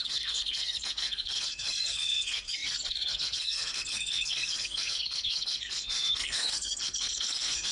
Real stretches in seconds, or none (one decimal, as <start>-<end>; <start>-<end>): none